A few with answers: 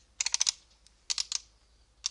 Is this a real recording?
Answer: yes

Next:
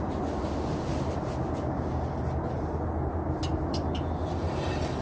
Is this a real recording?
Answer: yes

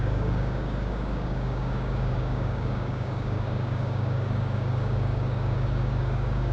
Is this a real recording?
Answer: no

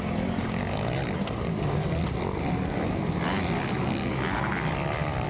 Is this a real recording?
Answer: yes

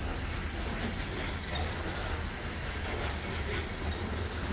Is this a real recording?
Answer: yes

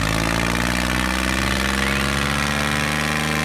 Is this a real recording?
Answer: yes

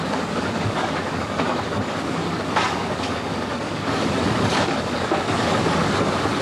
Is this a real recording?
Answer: no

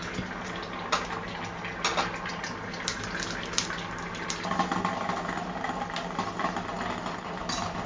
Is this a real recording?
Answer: yes